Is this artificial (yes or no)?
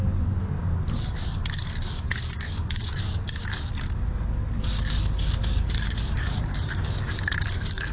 yes